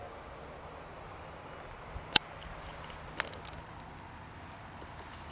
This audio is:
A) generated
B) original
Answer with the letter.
B